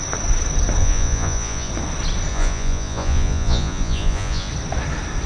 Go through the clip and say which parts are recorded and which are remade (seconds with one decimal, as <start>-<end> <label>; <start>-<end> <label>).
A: 0.0-0.8 recorded; 0.8-1.7 remade; 1.7-2.3 recorded; 2.3-4.5 remade; 4.5-5.3 recorded

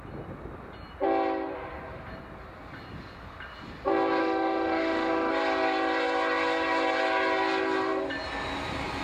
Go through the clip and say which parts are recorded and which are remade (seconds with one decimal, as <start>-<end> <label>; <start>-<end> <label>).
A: 0.0-4.2 recorded; 4.2-5.3 remade; 5.3-9.0 recorded